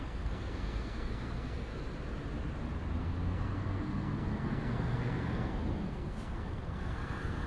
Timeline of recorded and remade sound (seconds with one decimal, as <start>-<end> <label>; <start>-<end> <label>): 0.0-1.7 remade; 1.7-3.0 recorded; 3.0-7.5 remade